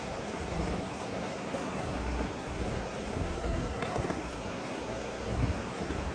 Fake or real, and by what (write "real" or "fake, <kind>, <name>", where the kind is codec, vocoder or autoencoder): fake, codec, SNAC